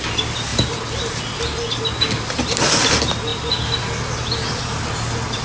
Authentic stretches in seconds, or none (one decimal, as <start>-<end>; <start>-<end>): 0.0-5.4